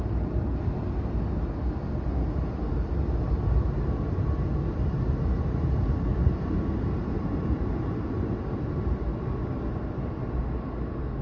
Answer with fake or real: real